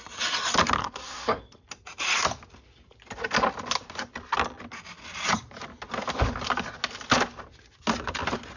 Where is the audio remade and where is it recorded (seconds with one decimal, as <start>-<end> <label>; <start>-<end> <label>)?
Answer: 0.0-0.8 recorded; 0.8-1.4 remade; 1.4-8.6 recorded